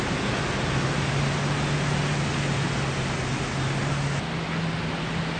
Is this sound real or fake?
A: real